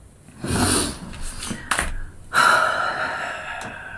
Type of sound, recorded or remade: recorded